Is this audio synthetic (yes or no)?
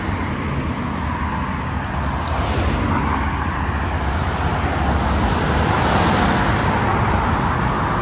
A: no